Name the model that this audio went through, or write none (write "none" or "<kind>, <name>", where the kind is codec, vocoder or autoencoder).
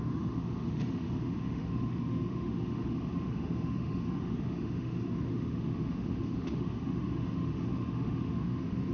autoencoder, DAC-VAE